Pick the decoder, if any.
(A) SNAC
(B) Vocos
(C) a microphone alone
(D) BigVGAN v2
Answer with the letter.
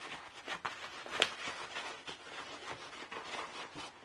C